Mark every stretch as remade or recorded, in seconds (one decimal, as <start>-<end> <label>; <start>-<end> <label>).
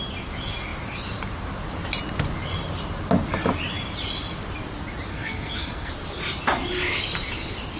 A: 0.0-5.1 recorded; 5.1-5.9 remade; 5.9-7.8 recorded